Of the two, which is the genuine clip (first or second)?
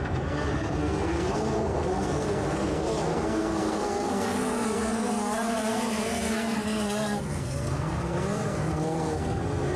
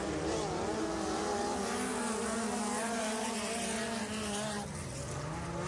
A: second